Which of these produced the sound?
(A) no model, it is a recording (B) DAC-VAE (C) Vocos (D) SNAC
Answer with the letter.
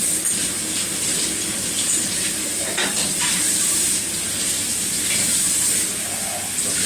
A